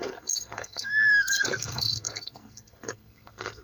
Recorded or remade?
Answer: remade